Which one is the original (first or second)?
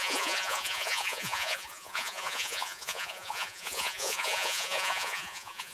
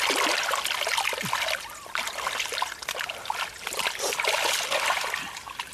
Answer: second